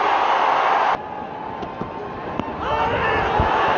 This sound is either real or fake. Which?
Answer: real